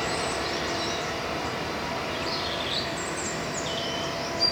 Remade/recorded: remade